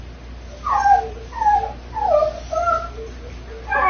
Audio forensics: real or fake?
real